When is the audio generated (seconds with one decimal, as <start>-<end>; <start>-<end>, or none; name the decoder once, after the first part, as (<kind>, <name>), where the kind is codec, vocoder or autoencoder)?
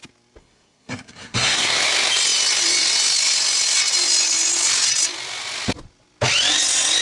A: 0.4-1.8 (codec, SNAC)